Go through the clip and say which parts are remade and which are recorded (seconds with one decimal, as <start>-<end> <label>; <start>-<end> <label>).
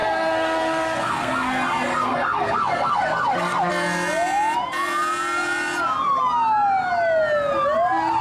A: 0.0-3.7 remade; 3.7-8.2 recorded